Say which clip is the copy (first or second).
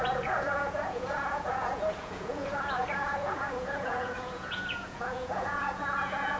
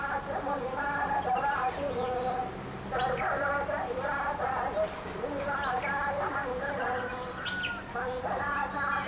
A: first